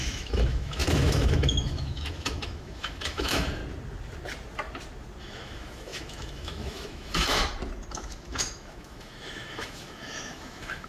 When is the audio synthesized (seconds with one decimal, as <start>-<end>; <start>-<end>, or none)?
0.0-3.6; 5.2-7.4; 7.9-10.9